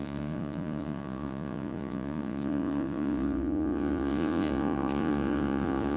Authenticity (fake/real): fake